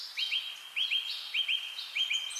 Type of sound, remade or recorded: recorded